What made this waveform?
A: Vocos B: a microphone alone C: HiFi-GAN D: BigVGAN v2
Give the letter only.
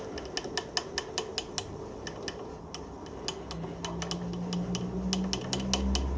B